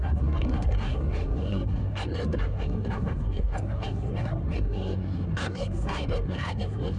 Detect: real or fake fake